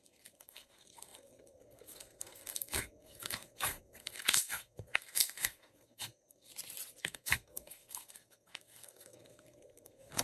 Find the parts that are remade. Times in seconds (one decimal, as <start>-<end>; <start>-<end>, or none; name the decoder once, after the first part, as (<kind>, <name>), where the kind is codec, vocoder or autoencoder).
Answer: 0.0-6.5 (codec, SNAC); 7.0-10.2